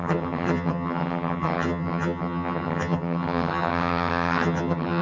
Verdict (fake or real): fake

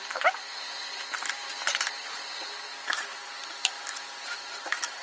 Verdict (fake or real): real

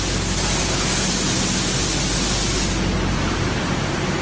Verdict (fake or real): real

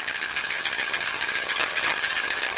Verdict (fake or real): fake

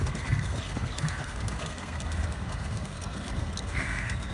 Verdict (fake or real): fake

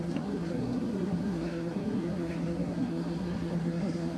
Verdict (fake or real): fake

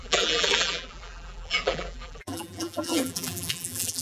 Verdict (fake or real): fake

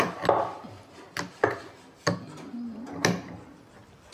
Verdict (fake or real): real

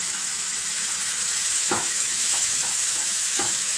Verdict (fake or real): fake